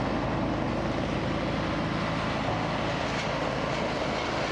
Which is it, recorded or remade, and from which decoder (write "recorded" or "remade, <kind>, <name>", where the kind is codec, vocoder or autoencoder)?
recorded